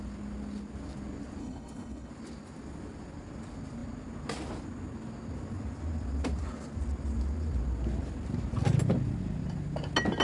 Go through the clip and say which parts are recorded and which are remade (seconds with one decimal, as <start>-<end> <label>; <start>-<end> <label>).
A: 0.0-1.4 recorded; 1.4-2.1 remade; 2.1-10.2 recorded

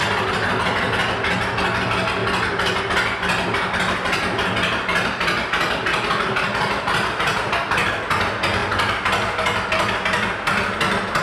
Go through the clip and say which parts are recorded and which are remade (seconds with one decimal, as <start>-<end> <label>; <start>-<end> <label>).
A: 0.0-11.2 recorded

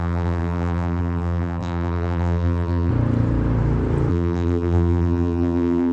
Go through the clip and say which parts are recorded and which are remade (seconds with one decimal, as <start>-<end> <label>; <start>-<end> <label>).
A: 0.0-2.9 remade; 2.9-4.1 recorded; 4.1-5.9 remade

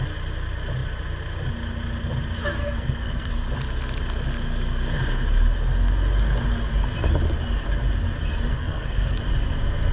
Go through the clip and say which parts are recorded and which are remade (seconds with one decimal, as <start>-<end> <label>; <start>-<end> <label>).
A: 0.0-2.6 recorded; 2.6-3.3 remade; 3.3-8.5 recorded; 8.5-9.2 remade; 9.2-9.9 recorded

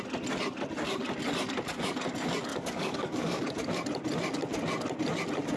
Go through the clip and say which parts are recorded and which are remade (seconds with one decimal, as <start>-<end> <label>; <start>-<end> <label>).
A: 0.0-2.5 recorded; 2.5-3.5 remade; 3.5-5.6 recorded